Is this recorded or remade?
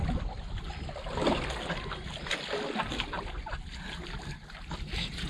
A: recorded